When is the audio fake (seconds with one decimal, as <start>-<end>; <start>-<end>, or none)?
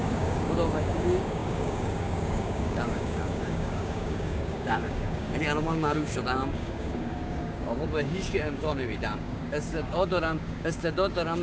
0.0-11.4